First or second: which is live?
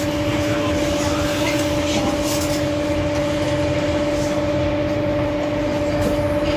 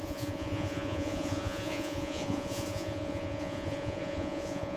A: first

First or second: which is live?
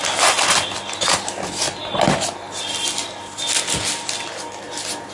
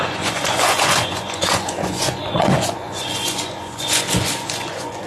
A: first